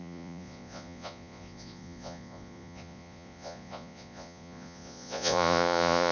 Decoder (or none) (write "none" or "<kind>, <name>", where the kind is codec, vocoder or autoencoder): vocoder, Vocos